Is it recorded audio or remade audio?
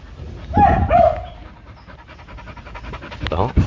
recorded